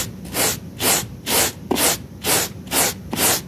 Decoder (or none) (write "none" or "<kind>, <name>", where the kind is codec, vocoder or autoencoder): none